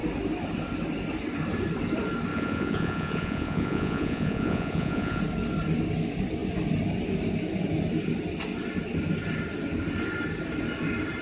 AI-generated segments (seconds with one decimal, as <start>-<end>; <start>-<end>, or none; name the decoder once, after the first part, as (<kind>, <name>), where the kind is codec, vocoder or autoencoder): 2.3-5.2 (vocoder, Vocos)